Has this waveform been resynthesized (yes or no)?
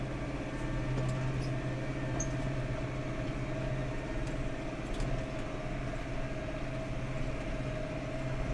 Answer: no